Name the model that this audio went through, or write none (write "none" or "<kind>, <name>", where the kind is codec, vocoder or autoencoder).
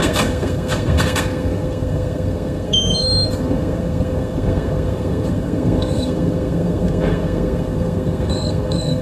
codec, SNAC